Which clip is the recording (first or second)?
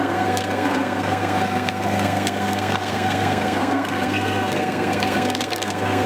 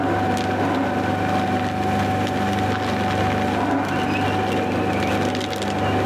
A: second